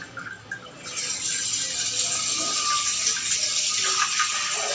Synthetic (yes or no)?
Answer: no